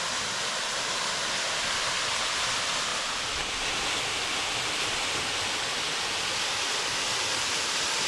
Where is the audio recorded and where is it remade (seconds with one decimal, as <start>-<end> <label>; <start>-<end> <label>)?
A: 0.0-8.1 recorded